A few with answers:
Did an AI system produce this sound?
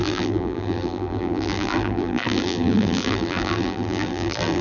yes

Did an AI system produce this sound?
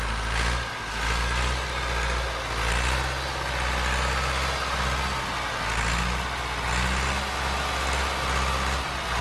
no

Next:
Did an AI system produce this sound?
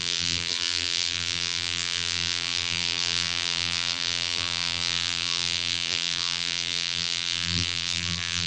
yes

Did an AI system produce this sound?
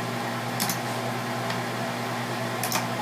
no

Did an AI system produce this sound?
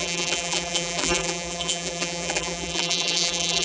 yes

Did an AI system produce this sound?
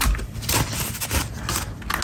no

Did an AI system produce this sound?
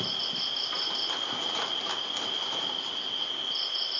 no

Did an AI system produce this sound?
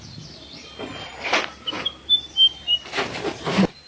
no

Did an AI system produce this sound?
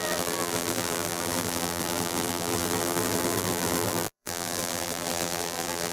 yes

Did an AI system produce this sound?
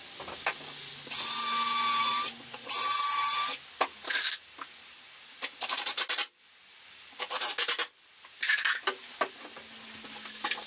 no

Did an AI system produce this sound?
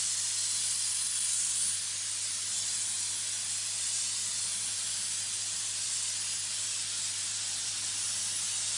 no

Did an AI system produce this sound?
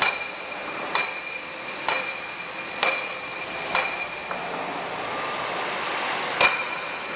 yes